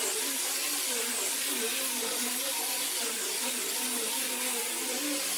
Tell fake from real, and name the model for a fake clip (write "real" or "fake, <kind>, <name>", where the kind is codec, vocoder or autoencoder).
real